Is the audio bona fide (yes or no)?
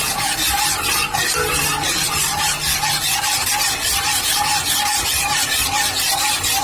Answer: yes